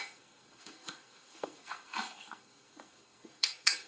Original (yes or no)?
no